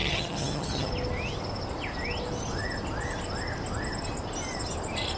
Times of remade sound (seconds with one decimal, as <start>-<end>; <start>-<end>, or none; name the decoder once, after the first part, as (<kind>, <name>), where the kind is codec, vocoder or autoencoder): 0.0-0.9 (vocoder, HiFi-GAN)